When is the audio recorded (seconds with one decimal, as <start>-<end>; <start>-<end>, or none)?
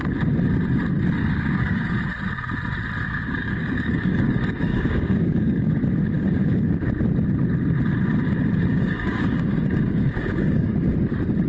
0.0-1.2; 1.9-3.0; 5.7-6.4; 6.9-8.7; 10.9-11.5